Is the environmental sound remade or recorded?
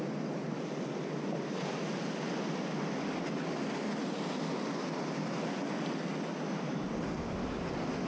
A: recorded